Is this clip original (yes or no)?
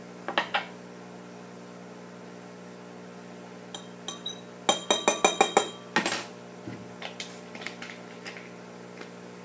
yes